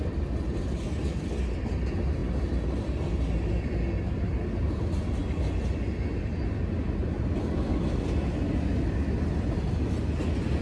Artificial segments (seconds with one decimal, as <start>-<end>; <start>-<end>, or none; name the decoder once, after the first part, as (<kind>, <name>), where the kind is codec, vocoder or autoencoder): none